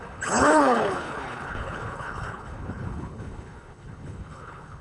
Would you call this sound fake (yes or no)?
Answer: yes